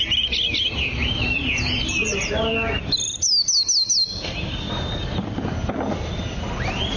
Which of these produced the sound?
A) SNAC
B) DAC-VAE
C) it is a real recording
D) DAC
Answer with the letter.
C